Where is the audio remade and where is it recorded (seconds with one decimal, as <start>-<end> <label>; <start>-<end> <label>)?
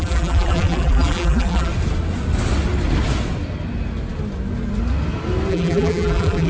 0.0-1.7 remade; 1.7-5.5 recorded; 5.5-6.5 remade